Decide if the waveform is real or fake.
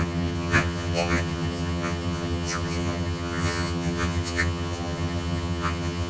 fake